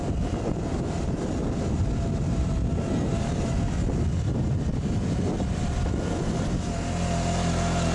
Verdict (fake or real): real